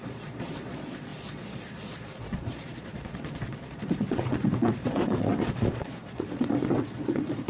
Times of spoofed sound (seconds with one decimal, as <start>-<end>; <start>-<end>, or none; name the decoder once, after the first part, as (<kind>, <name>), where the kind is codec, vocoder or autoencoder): 0.0-7.5 (vocoder, Vocos)